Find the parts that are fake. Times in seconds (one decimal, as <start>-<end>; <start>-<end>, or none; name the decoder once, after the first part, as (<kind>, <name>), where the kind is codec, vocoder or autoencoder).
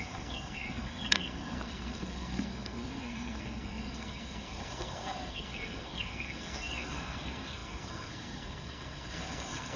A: 0.0-9.8 (codec, SNAC)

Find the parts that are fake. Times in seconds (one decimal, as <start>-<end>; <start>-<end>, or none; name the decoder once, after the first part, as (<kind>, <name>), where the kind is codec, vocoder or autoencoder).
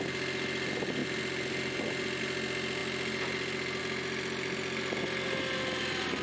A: none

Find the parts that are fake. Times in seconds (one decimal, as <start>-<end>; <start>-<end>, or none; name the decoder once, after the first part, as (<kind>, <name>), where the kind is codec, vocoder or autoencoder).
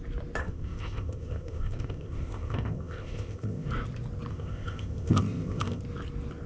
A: 0.4-3.7 (codec, ZipCodec); 4.3-5.8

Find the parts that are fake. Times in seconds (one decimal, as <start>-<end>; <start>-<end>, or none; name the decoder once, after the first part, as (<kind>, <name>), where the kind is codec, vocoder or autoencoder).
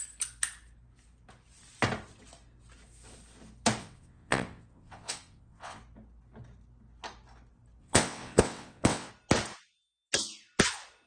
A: 3.8-5.8 (vocoder, WaveNeXt); 7.8-9.1